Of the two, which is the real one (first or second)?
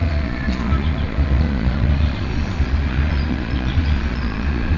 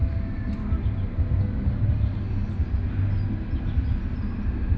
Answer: second